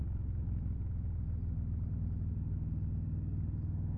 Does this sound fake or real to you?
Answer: real